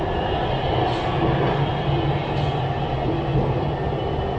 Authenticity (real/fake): real